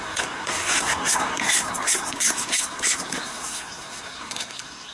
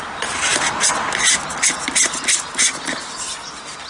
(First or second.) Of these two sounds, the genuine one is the second